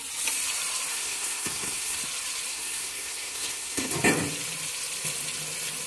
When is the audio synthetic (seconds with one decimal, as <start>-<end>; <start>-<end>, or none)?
0.9-2.0; 2.5-3.9